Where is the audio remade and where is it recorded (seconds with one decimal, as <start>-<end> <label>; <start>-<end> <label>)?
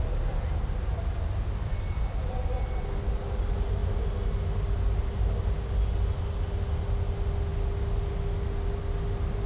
0.0-9.5 recorded